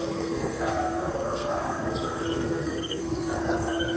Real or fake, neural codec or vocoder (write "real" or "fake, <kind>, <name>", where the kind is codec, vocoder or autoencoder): fake, codec, SNAC